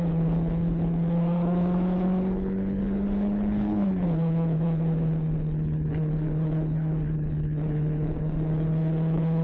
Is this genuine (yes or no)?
no